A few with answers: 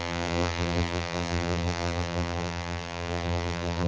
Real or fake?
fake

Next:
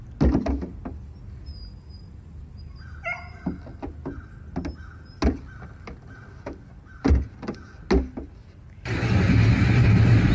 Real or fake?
real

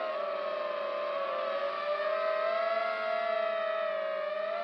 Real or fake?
real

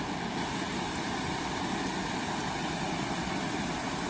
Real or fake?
real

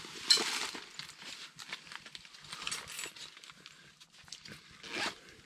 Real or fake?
real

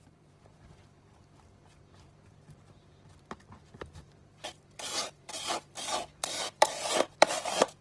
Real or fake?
fake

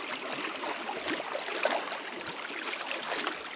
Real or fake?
real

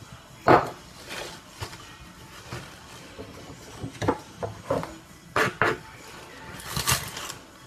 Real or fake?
real